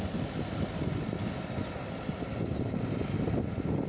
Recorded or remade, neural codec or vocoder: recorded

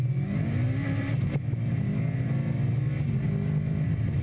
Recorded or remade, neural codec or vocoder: recorded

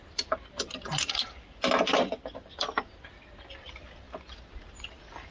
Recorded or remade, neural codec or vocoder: recorded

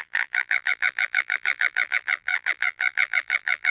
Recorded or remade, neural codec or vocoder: remade, vocoder, BigVGAN v2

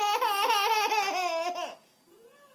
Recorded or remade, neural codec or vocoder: recorded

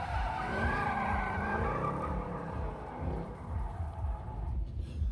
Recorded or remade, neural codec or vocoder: remade, vocoder, BigVGAN v2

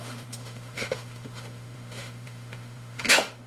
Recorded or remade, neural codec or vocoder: remade, autoencoder, DAC-VAE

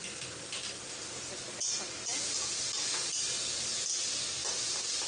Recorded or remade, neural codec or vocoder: recorded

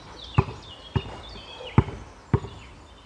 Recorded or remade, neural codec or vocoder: remade, vocoder, BigVGAN v2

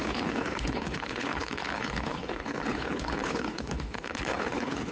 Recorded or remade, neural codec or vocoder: remade, codec, HILCodec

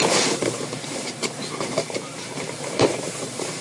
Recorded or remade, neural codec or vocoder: remade, vocoder, BigVGAN v2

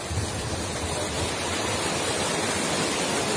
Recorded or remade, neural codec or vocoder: recorded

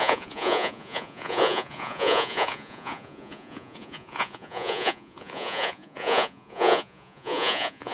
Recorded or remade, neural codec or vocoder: remade, vocoder, Vocos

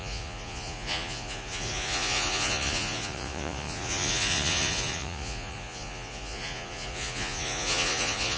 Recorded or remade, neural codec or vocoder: remade, vocoder, Vocos